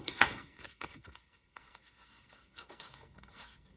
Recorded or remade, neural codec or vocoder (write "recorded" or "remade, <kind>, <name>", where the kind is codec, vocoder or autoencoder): remade, codec, SNAC